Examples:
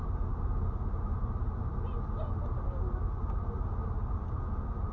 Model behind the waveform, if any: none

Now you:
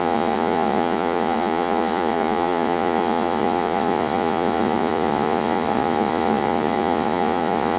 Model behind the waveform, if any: vocoder, Vocos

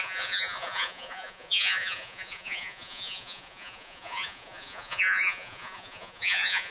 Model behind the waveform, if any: vocoder, Vocos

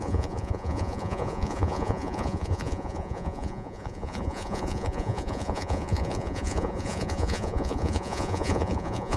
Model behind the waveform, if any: vocoder, Vocos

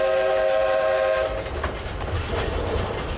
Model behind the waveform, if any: none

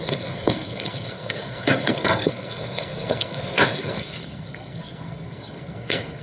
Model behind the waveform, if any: codec, SNAC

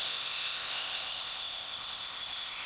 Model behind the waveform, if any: codec, ZipCodec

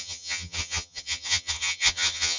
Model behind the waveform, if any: vocoder, HiFi-GAN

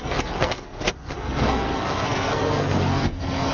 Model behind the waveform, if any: codec, SNAC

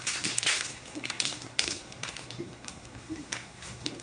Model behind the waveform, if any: codec, SNAC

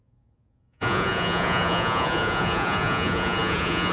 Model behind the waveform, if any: vocoder, Vocos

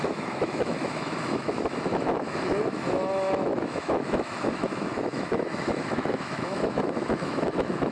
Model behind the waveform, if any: autoencoder, DAC-VAE